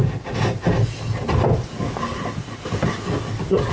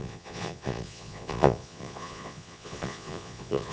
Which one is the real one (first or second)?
first